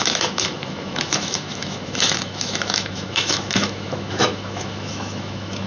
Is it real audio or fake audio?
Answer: fake